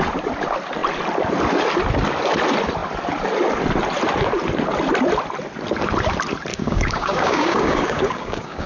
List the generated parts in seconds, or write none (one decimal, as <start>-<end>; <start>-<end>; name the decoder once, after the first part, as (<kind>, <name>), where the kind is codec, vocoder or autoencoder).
6.5-8.7 (codec, DAC)